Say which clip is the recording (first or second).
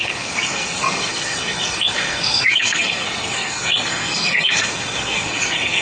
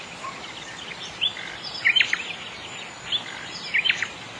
second